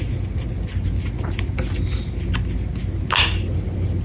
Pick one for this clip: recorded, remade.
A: recorded